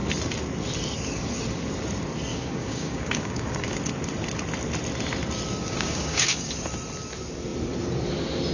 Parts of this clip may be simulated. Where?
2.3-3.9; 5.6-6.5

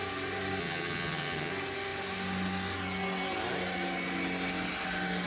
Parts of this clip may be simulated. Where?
0.6-1.5

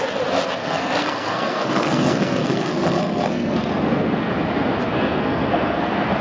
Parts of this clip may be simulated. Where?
0.6-4.3; 4.8-6.2

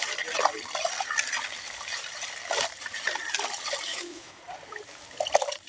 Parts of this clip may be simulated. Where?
3.9-4.4

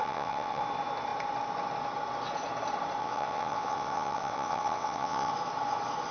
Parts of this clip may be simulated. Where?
0.0-0.6; 3.0-5.3

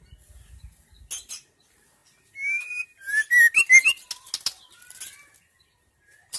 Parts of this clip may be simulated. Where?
none

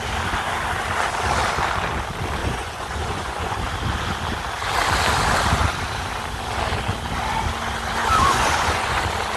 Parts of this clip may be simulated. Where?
2.4-3.6; 8.0-9.0

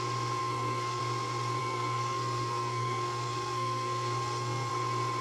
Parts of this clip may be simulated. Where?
0.4-1.0; 1.6-4.7